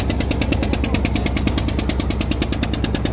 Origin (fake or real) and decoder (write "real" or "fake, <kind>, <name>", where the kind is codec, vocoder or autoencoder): real